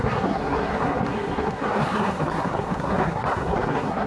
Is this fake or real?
fake